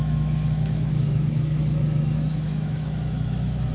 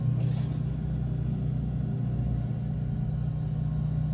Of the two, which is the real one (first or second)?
second